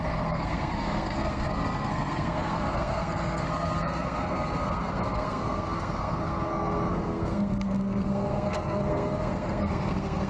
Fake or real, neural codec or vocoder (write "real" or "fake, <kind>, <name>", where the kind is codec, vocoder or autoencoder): fake, codec, SNAC